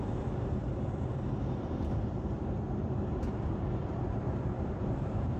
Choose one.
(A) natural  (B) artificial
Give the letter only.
B